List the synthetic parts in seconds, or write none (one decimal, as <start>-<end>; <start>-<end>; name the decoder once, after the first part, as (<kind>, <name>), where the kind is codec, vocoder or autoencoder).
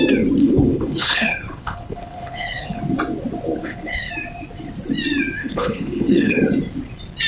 0.4-2.8 (codec, HILCodec); 3.6-4.1; 5.4-6.4